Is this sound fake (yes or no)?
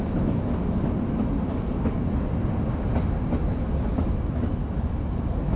no